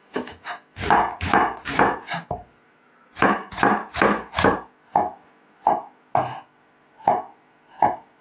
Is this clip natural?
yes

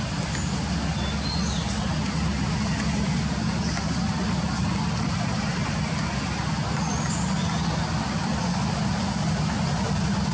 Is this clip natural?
yes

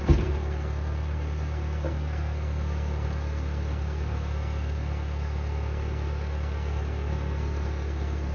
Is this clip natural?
no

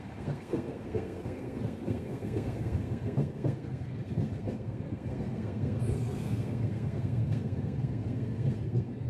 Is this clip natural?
no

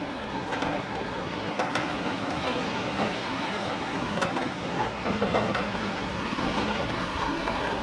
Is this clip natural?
no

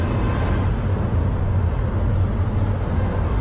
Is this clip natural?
yes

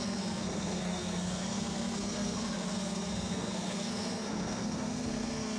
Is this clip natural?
no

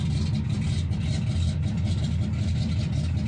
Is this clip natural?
yes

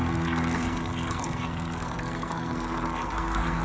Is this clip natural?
no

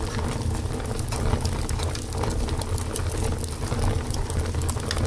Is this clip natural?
yes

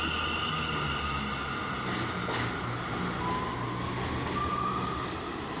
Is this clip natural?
yes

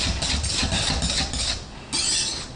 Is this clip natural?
yes